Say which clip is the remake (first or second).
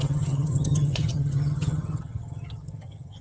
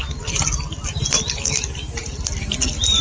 first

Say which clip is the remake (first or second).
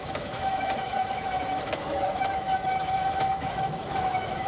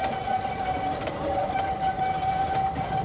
first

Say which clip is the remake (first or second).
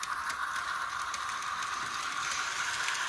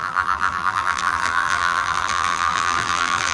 second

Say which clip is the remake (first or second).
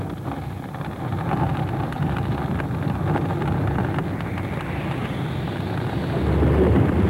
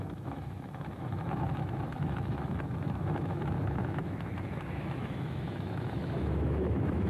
second